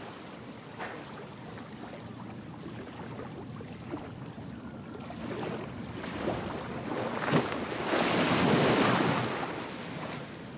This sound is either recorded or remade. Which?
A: recorded